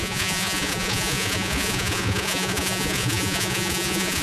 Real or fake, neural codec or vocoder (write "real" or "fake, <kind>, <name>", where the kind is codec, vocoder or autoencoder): fake, vocoder, Vocos